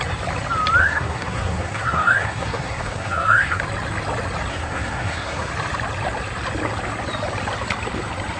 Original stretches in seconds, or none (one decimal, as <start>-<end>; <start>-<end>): 0.0-0.8; 3.6-4.5; 5.5-8.4